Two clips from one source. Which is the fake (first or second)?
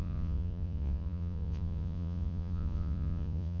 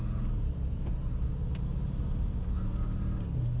first